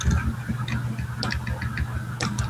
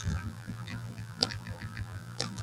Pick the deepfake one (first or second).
second